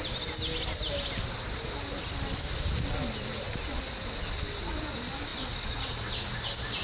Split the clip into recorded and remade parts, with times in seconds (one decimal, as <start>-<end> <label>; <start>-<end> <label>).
0.0-6.8 recorded